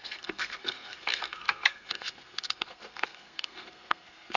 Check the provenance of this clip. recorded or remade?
remade